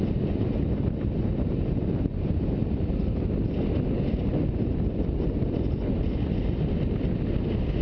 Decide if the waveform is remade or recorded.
recorded